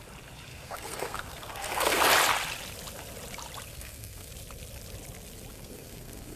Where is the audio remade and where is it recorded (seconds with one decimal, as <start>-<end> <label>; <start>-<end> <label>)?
0.0-0.5 recorded; 0.5-2.0 remade; 2.0-3.7 recorded; 3.7-4.3 remade; 4.3-5.5 recorded; 5.5-6.4 remade